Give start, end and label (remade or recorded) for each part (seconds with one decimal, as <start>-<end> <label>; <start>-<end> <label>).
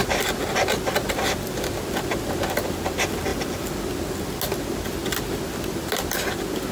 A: 0.0-6.7 recorded